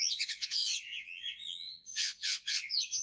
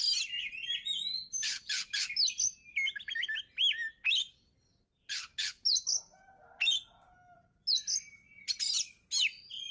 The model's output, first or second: first